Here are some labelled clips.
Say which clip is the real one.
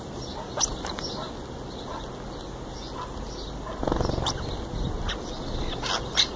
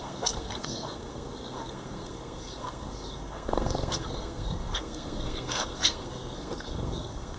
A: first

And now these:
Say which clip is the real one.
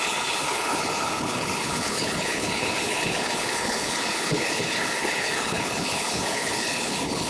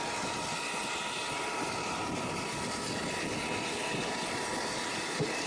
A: second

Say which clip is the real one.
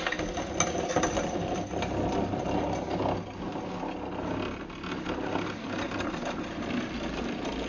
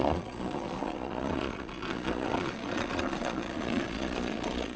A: first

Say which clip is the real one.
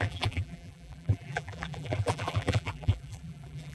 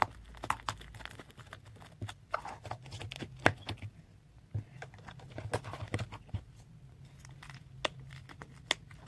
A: second